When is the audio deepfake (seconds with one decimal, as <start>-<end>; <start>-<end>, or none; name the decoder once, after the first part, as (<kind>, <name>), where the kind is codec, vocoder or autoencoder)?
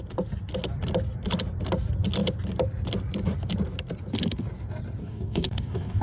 5.0-6.0 (codec, DAC)